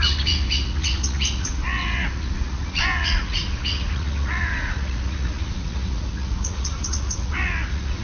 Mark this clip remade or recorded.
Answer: remade